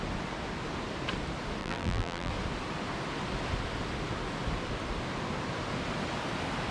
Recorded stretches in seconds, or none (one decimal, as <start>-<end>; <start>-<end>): 0.0-1.6; 2.3-6.7